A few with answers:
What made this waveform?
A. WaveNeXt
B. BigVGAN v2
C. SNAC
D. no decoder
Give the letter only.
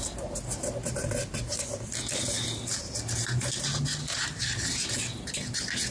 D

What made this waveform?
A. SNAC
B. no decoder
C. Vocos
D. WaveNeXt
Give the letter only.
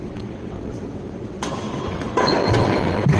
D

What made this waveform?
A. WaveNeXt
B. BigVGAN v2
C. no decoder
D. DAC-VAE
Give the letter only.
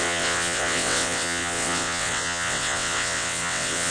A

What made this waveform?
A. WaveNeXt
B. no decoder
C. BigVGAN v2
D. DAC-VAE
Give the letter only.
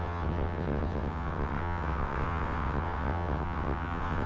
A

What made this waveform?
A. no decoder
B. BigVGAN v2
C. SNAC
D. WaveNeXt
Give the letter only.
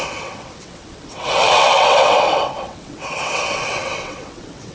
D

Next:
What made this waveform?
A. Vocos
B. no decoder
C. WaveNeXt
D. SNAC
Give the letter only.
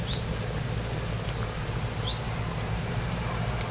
B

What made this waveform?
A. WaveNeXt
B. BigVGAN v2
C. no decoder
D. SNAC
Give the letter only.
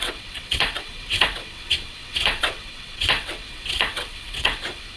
A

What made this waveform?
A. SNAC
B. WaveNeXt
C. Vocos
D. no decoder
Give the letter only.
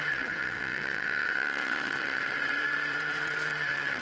B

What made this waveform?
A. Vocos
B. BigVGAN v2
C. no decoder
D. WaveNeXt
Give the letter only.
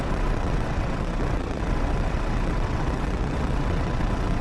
D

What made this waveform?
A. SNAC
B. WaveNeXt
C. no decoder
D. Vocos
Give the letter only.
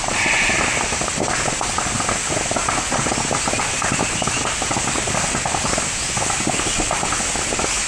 C